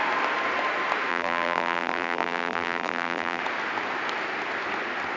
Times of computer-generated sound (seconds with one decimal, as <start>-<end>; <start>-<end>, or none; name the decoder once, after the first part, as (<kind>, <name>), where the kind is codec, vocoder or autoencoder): 1.1-3.4 (vocoder, BigVGAN v2)